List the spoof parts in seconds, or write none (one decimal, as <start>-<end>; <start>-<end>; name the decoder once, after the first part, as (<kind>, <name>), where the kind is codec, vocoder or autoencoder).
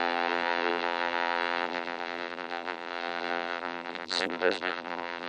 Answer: 0.0-5.3 (vocoder, BigVGAN v2)